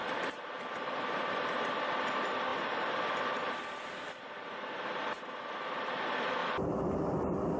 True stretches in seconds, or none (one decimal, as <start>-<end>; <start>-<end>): 0.0-7.6